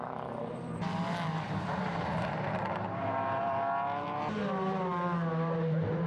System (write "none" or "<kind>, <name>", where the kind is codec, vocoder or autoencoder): vocoder, BigVGAN v2